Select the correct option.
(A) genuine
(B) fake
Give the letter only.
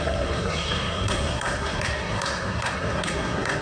B